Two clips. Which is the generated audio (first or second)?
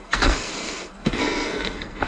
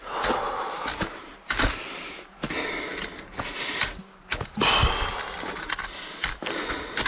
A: first